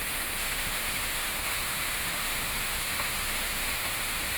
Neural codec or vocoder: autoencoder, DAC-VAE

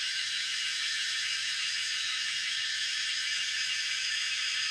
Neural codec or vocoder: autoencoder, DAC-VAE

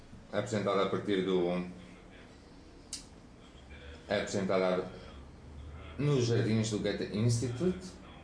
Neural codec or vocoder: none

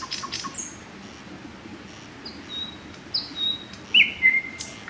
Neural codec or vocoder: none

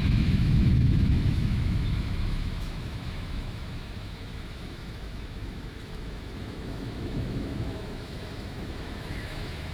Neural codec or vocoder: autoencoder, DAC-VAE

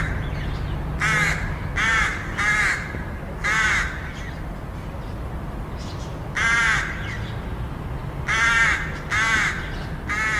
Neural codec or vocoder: none